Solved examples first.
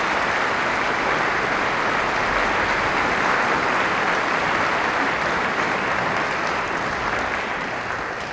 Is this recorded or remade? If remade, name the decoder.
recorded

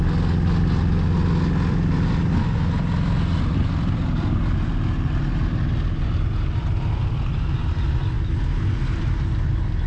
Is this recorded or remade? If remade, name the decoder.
recorded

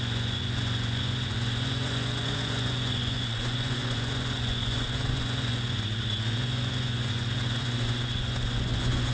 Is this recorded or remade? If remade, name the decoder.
remade, vocoder, Vocos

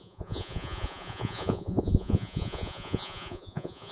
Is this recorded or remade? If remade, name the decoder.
remade, vocoder, Vocos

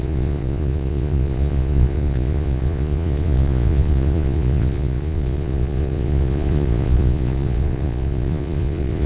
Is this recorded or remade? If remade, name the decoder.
remade, vocoder, Vocos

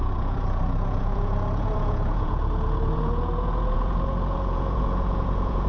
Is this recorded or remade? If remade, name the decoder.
remade, vocoder, Vocos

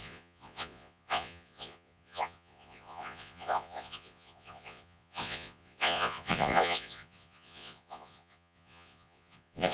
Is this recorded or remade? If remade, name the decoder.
remade, vocoder, Vocos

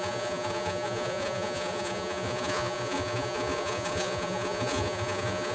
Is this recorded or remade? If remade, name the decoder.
remade, vocoder, Vocos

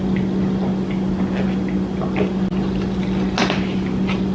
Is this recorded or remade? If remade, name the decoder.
recorded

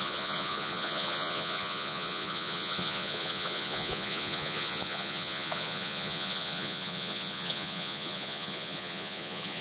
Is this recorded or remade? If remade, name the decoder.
remade, vocoder, Vocos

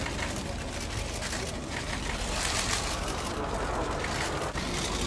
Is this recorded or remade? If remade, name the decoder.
recorded